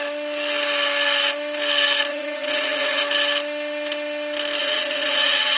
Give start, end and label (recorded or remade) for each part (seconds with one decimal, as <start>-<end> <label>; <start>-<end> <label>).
0.0-2.1 recorded; 2.1-3.0 remade; 3.0-4.6 recorded; 4.6-5.6 remade